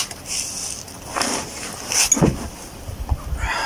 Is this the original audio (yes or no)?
yes